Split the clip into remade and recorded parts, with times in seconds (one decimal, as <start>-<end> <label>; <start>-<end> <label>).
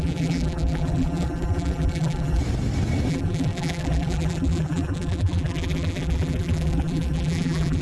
0.0-2.4 remade; 2.4-3.1 recorded; 3.1-7.8 remade